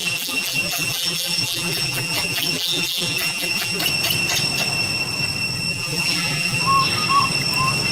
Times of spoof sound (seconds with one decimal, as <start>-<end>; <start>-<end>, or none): 0.0-3.8; 5.7-6.6